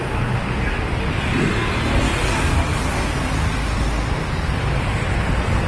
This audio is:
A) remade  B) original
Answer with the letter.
B